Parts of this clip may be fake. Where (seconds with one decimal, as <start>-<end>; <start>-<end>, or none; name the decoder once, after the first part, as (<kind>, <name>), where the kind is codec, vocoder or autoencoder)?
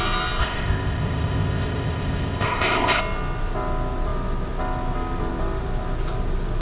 0.4-3.0 (codec, ZipCodec)